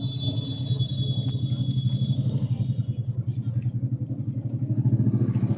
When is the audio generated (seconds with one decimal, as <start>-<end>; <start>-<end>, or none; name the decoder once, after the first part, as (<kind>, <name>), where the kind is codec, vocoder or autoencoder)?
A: none

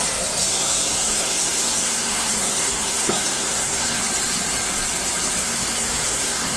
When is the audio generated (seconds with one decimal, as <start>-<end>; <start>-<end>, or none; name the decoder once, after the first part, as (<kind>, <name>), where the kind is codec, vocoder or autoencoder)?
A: 0.4-4.0 (codec, SNAC); 5.4-6.6

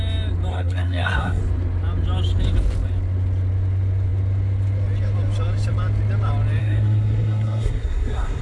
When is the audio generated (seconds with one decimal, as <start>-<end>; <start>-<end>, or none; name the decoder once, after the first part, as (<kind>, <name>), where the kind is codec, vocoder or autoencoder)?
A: 0.5-1.4 (codec, SNAC); 6.6-8.4